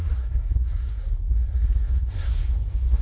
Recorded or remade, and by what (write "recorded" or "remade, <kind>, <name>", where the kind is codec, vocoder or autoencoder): remade, codec, SNAC